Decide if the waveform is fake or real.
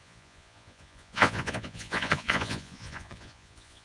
fake